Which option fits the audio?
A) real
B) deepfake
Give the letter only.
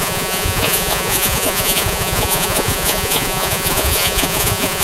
B